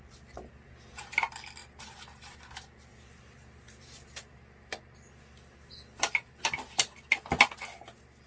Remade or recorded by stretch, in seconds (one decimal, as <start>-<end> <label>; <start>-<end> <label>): 0.0-1.6 recorded; 1.6-2.5 remade; 2.5-2.9 recorded; 2.9-6.4 remade; 6.4-8.3 recorded